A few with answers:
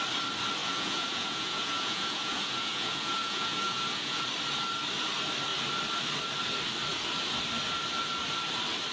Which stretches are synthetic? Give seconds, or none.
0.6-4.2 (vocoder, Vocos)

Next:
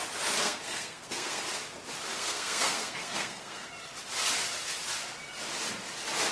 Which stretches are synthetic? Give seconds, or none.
0.4-1.4 (codec, SNAC); 2.1-3.7

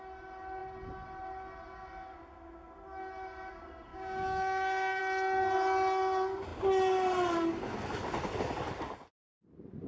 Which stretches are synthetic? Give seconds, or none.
3.9-5.0 (codec, DAC)

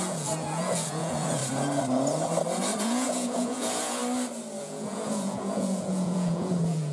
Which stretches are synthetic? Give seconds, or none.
0.0-1.4 (vocoder, Vocos); 2.8-4.0; 4.6-6.9

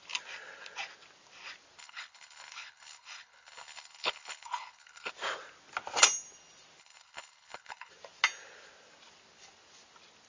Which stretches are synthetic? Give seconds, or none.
1.8-5.1 (codec, HILCodec); 6.8-7.9

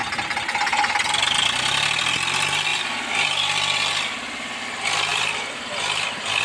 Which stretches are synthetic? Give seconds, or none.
2.7-3.9 (vocoder, BigVGAN v2); 5.1-6.4